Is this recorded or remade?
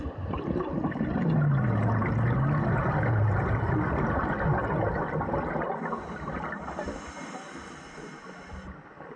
recorded